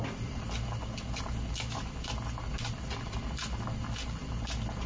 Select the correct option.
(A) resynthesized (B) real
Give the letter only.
B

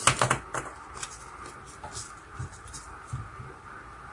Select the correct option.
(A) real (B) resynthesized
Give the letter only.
A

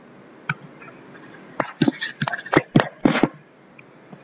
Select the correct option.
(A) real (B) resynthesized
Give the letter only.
A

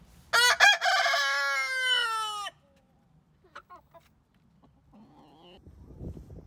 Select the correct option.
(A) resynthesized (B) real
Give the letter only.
B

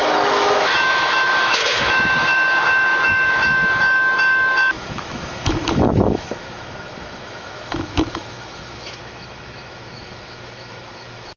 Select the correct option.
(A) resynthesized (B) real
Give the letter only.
A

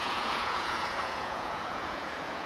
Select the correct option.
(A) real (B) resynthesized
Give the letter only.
B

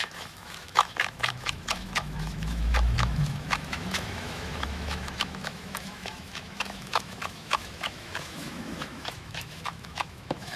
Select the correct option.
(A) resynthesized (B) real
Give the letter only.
A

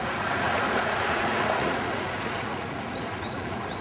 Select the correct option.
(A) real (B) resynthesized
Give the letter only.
B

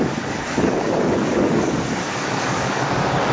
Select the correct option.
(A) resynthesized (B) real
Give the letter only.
A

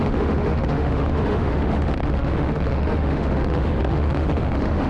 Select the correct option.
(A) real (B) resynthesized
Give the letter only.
B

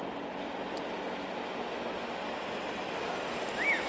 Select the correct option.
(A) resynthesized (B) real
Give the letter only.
B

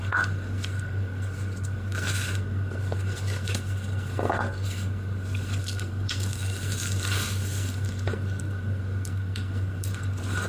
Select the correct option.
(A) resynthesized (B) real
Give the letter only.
A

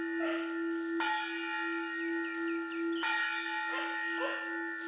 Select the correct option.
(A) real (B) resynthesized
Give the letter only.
A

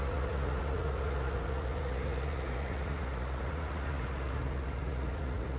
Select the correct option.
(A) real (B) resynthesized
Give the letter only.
B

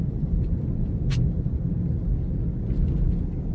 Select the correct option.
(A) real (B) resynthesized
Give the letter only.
A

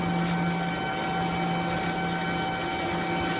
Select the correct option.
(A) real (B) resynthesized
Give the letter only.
A